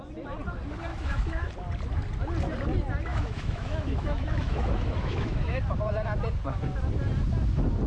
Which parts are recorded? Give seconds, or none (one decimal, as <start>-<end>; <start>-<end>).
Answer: 0.0-0.9; 1.5-3.1; 5.6-7.9